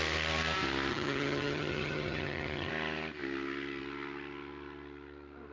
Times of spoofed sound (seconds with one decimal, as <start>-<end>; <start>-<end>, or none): 0.9-2.7